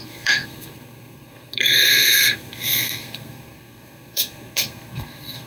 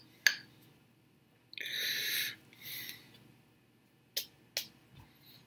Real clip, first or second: second